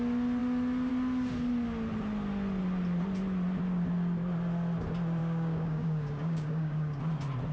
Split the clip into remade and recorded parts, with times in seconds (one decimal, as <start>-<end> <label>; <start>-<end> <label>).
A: 0.0-5.2 recorded; 5.2-7.0 remade; 7.0-7.5 recorded